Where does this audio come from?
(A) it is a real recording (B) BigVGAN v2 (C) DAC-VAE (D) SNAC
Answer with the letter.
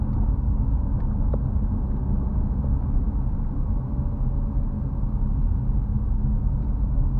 A